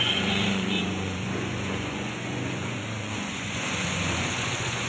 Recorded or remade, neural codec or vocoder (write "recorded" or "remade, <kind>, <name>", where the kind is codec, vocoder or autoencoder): remade, vocoder, Vocos